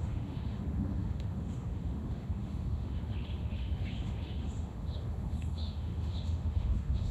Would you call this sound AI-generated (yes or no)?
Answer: yes